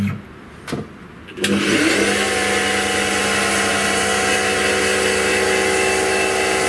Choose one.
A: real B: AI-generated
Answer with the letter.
A